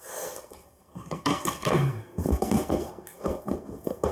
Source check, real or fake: fake